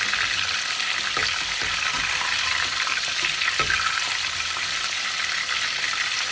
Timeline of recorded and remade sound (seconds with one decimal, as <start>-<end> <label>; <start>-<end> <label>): 0.0-6.3 recorded